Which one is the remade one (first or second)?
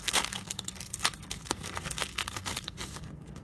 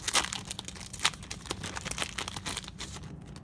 first